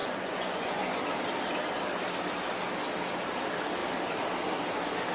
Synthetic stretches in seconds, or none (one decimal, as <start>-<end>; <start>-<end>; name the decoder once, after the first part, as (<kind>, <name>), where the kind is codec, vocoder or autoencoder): 0.0-1.0 (vocoder, Vocos)